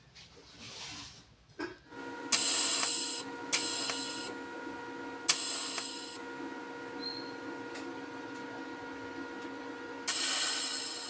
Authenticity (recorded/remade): recorded